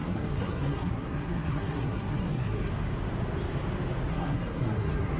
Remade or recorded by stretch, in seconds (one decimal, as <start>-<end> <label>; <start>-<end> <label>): 0.0-2.7 remade; 2.7-4.1 recorded; 4.1-5.2 remade